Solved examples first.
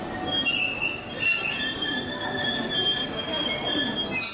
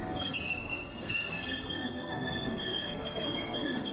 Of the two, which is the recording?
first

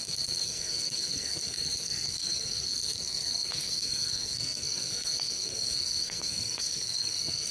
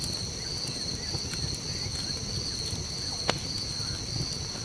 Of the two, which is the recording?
second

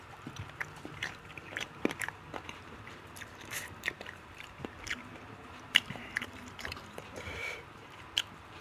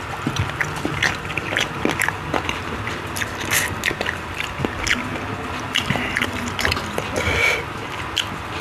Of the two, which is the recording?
second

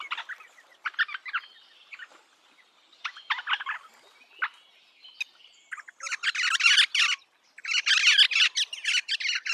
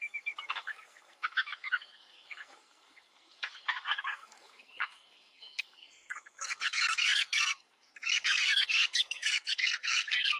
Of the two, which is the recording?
first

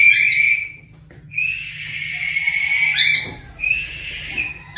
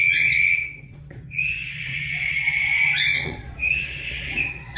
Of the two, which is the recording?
first